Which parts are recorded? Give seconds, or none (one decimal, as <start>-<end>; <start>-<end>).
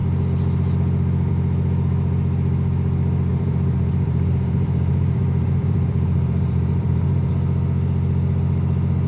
0.0-3.3; 7.3-9.1